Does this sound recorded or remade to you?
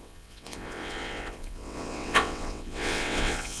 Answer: remade